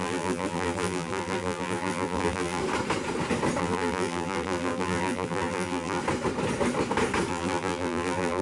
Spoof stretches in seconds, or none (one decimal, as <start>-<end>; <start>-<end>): 0.0-2.6; 3.6-6.0; 7.3-8.4